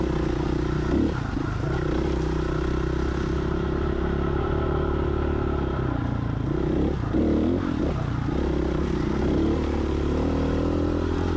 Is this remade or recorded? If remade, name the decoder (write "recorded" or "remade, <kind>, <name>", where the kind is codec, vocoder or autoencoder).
recorded